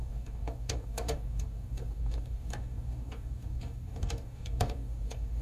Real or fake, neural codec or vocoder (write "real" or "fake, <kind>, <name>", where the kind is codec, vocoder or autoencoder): fake, codec, DAC